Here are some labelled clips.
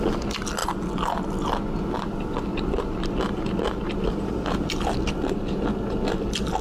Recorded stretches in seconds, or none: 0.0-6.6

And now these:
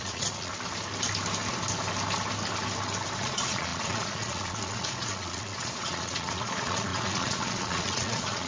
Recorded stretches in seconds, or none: 0.5-3.2

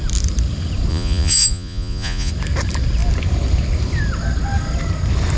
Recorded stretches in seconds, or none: 0.0-0.9; 2.3-5.4

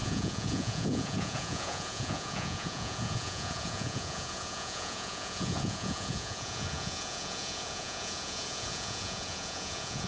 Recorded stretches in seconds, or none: none

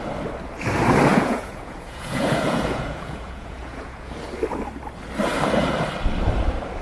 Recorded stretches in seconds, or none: 0.0-1.1; 4.2-6.8

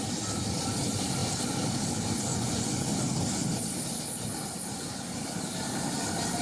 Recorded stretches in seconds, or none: 0.0-2.3; 3.0-6.4

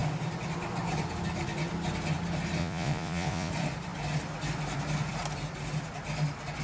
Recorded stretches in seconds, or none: 0.0-2.6; 3.5-6.6